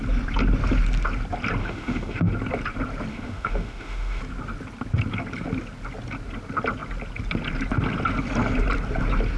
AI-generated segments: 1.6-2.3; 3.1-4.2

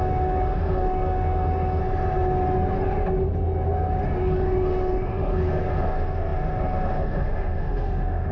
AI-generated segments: 0.0-1.8; 4.2-8.3

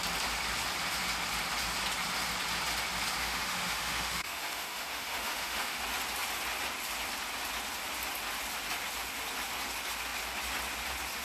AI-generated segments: 3.2-5.8

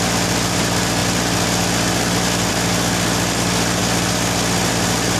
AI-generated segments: none